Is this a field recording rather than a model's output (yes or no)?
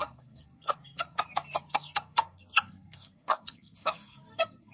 no